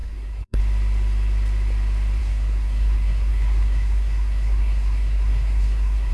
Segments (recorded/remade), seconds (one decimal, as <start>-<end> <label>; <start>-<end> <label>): 0.0-0.6 remade; 0.6-2.2 recorded; 2.2-6.1 remade